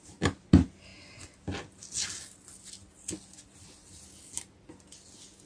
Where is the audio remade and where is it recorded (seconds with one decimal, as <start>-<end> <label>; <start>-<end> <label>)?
0.0-5.5 recorded